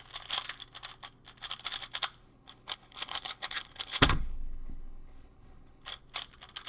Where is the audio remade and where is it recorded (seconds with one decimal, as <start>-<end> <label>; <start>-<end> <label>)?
0.0-2.2 recorded; 2.2-6.0 remade; 6.0-6.7 recorded